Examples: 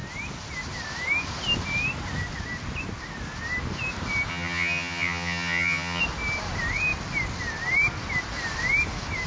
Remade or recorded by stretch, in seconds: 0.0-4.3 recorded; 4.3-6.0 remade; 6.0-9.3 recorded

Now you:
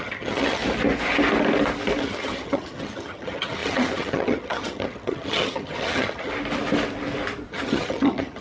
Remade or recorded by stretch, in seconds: 0.0-0.6 remade; 0.6-2.0 recorded; 2.0-6.3 remade; 6.3-7.5 recorded; 7.5-8.4 remade

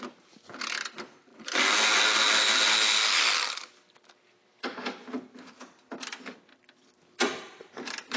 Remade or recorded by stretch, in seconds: 0.0-8.2 recorded